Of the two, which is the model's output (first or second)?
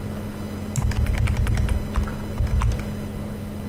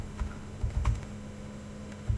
second